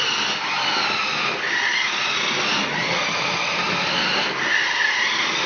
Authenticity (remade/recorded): recorded